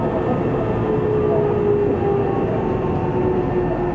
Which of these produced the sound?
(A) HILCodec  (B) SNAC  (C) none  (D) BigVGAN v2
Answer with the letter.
C